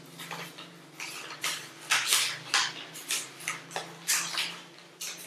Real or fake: real